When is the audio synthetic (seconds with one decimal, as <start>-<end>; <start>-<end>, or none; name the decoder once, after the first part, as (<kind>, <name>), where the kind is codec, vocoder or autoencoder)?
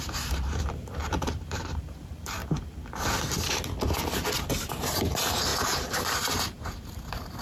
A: 0.0-2.4 (vocoder, BigVGAN v2); 4.8-7.4